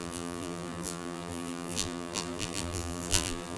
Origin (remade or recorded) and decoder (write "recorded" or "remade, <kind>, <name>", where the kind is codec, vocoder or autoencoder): remade, vocoder, BigVGAN v2